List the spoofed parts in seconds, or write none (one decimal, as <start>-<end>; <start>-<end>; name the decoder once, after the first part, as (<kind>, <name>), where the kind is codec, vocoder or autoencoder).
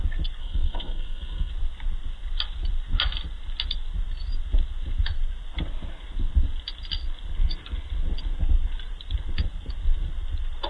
0.4-1.5 (codec, SNAC)